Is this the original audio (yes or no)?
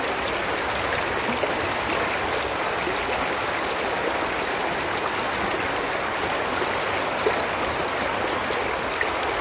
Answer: yes